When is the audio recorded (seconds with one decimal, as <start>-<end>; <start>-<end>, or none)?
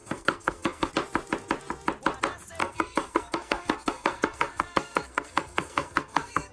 0.9-2.6